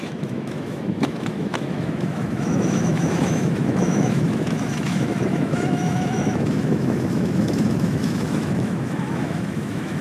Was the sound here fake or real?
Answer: fake